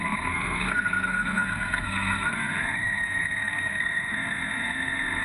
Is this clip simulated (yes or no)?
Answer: yes